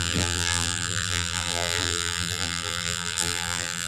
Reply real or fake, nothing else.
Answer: fake